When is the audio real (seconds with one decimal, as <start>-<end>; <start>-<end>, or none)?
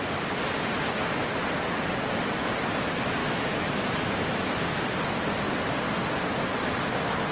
0.0-3.2; 4.5-7.3